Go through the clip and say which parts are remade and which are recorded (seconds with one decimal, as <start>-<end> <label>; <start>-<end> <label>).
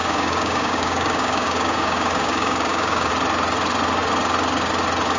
0.0-3.1 remade; 3.1-5.2 recorded